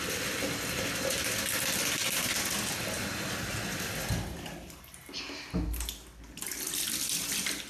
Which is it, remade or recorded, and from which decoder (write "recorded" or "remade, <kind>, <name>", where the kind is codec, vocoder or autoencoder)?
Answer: recorded